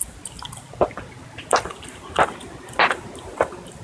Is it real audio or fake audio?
real